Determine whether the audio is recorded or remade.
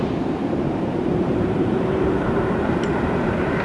remade